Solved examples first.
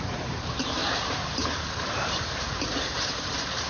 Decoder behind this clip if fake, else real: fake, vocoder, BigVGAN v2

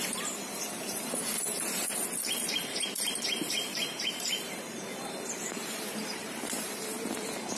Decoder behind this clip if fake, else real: fake, vocoder, BigVGAN v2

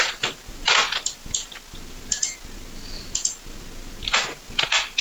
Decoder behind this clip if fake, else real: real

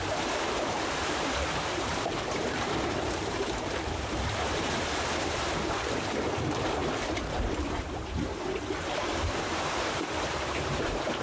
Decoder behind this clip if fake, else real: fake, vocoder, BigVGAN v2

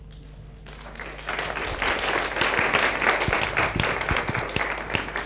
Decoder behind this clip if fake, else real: real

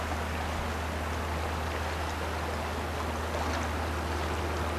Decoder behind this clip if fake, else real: real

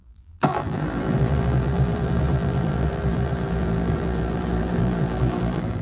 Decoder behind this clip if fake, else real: fake, vocoder, BigVGAN v2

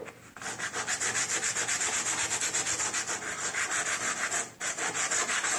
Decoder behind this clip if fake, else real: real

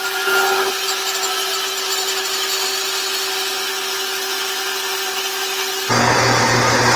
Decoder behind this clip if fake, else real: real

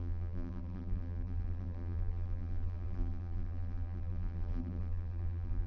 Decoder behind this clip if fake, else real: fake, vocoder, BigVGAN v2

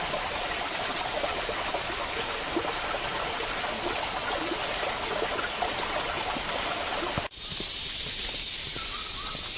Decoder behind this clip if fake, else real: real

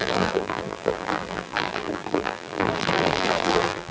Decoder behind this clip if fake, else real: fake, vocoder, BigVGAN v2